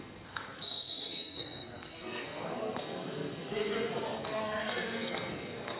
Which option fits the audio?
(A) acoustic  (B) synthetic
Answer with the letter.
B